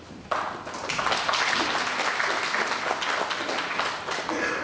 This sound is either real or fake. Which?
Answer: real